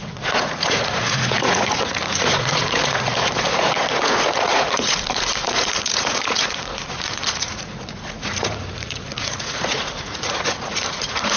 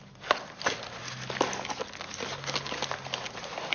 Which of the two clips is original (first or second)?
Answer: second